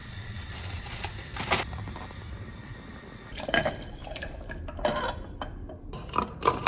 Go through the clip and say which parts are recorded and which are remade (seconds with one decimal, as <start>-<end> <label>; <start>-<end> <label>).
0.0-1.1 remade; 1.1-6.7 recorded

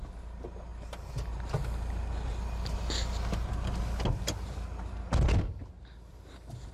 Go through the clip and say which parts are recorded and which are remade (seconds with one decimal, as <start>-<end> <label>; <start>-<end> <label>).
0.0-6.7 recorded

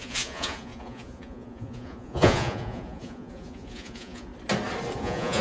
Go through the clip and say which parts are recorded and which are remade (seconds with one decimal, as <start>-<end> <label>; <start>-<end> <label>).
0.0-4.3 remade; 4.3-5.0 recorded; 5.0-5.4 remade

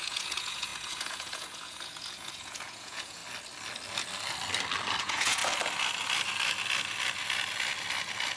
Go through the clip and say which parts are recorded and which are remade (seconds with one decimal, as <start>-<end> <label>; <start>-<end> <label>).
0.0-3.2 remade; 3.2-5.0 recorded; 5.0-5.4 remade; 5.4-8.4 recorded